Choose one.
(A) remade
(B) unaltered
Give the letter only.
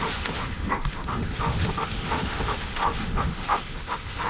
A